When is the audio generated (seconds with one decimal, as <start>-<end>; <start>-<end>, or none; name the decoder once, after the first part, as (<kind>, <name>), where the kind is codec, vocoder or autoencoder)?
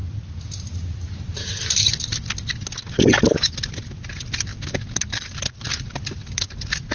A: none